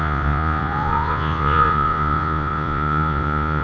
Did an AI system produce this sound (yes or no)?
yes